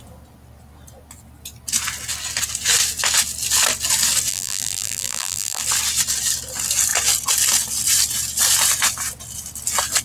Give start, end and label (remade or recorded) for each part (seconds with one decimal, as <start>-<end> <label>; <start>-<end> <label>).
0.0-4.3 recorded; 4.3-5.6 remade; 5.6-10.0 recorded